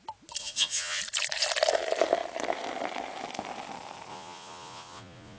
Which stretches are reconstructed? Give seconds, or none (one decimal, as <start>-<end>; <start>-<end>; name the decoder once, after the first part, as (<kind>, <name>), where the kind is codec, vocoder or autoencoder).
0.4-1.0 (vocoder, Vocos); 4.1-5.4